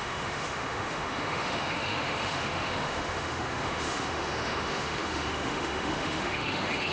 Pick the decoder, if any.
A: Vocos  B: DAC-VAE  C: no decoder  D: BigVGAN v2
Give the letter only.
B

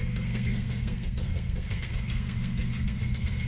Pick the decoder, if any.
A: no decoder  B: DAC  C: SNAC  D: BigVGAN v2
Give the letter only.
C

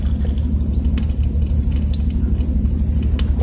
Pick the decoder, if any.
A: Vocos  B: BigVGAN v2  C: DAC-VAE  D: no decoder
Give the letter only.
D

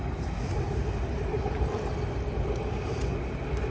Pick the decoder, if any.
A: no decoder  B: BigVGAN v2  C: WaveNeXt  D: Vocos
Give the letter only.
A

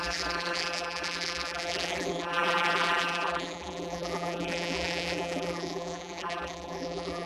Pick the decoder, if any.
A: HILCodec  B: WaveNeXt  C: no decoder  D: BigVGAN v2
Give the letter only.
D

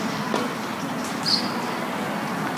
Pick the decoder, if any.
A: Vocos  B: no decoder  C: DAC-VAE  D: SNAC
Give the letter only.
B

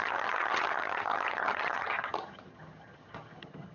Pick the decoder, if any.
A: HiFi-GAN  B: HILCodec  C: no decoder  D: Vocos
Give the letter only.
A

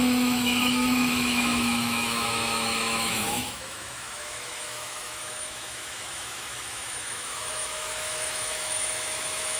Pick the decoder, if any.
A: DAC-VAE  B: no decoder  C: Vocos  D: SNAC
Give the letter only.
A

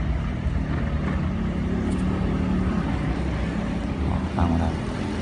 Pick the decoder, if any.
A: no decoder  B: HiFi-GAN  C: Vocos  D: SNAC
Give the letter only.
A